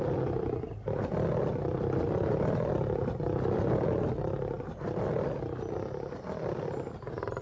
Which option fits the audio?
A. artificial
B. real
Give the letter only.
B